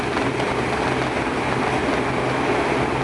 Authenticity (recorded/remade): recorded